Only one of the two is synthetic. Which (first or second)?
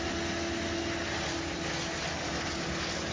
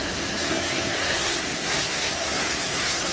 second